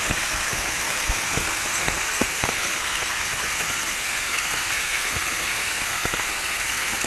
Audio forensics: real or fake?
fake